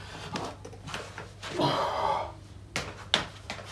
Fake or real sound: real